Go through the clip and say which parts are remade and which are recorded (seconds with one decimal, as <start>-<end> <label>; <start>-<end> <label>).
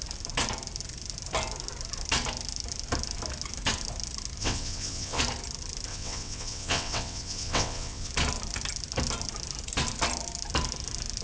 0.0-4.4 recorded; 4.4-5.2 remade; 5.2-5.9 recorded; 5.9-8.1 remade; 8.1-11.2 recorded